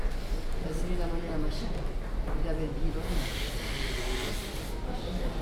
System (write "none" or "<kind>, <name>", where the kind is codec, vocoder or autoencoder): none